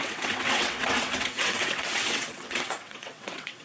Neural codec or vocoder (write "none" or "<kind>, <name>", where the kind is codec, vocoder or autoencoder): vocoder, WaveNeXt